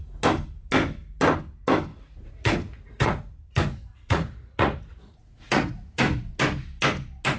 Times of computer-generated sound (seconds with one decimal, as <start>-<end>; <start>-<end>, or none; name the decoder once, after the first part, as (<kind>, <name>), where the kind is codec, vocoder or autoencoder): 1.9-6.3 (vocoder, Vocos)